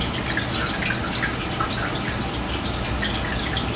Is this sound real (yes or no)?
yes